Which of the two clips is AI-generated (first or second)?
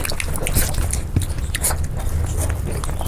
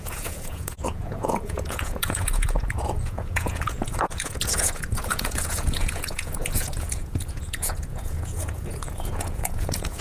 second